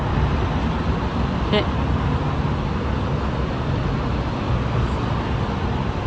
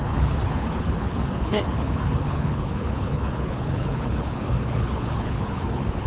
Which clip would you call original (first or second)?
first